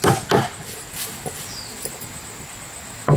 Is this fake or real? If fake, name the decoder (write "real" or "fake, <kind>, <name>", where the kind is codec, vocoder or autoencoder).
real